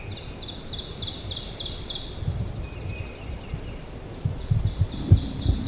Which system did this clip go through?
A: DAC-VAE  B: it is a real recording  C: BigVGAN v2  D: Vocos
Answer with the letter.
C